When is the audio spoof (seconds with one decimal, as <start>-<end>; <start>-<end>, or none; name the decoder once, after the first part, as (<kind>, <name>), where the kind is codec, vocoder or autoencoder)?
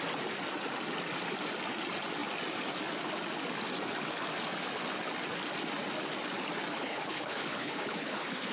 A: 6.7-8.5 (codec, HILCodec)